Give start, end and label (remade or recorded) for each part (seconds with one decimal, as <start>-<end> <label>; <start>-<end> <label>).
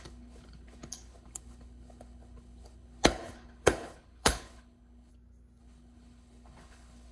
0.0-5.1 remade; 5.1-5.6 recorded; 5.6-7.1 remade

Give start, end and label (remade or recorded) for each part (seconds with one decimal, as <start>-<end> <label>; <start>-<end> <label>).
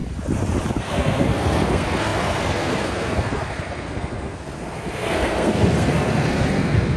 0.0-0.8 recorded; 0.8-7.0 remade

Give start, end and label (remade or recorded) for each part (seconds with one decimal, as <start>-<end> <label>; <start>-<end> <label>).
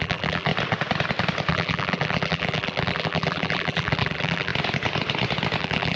0.0-0.5 remade; 0.5-1.5 recorded; 1.5-4.5 remade; 4.5-5.6 recorded; 5.6-6.0 remade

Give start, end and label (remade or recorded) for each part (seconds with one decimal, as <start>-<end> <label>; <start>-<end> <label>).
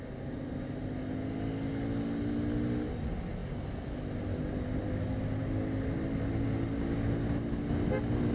0.0-8.3 recorded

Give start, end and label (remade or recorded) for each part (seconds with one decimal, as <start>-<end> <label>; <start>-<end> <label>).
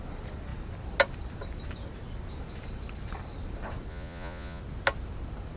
0.0-3.9 recorded; 3.9-4.6 remade; 4.6-5.6 recorded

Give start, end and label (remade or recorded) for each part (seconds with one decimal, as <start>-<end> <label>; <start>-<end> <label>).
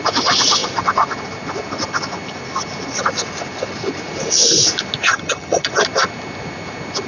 0.0-5.1 recorded; 5.1-5.7 remade; 5.7-7.1 recorded